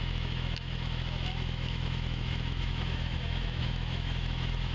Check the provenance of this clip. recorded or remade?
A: remade